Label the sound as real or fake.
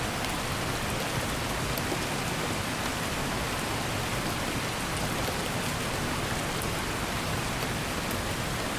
real